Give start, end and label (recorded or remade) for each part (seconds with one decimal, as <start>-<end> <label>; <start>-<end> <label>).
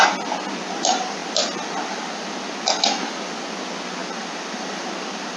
0.0-5.4 recorded